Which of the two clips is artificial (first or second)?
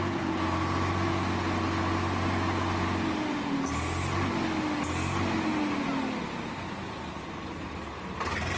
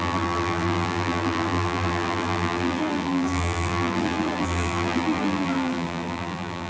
second